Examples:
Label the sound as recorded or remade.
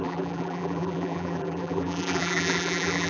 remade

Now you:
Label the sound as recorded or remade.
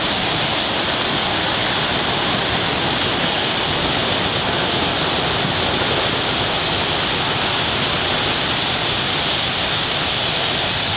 recorded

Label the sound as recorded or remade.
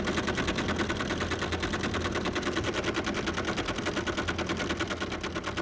recorded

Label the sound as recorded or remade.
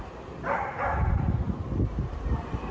remade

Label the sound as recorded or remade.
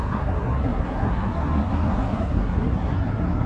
remade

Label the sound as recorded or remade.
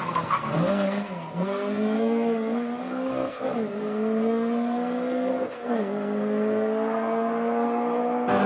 remade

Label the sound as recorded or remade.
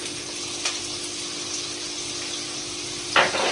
recorded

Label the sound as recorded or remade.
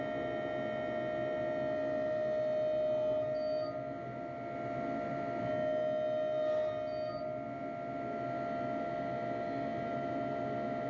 recorded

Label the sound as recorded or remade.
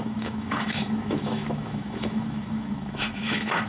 remade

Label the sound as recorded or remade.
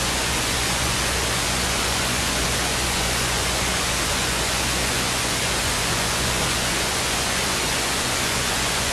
remade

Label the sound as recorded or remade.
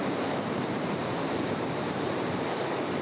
remade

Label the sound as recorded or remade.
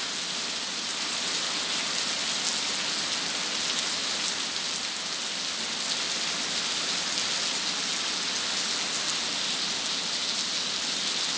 recorded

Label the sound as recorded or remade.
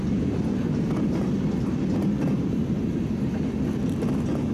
recorded